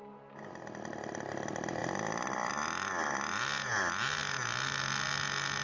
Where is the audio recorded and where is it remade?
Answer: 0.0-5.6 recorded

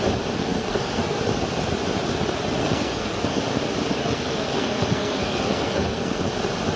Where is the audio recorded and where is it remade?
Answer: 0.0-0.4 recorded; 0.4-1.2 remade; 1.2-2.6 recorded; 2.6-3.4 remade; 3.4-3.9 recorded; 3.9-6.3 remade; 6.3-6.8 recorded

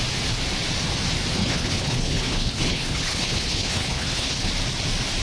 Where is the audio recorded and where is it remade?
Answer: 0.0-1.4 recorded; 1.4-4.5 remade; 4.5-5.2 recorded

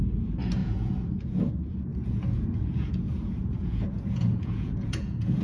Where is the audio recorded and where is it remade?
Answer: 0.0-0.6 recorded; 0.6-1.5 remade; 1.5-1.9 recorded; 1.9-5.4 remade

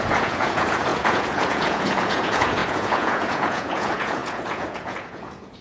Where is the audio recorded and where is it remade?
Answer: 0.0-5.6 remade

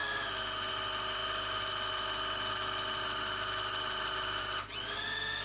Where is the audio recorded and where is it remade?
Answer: 0.0-5.4 recorded

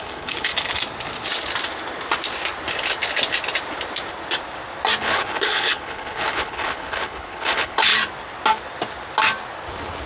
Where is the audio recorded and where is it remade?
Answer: 0.0-0.5 remade; 0.5-5.0 recorded; 5.0-7.9 remade; 7.9-10.1 recorded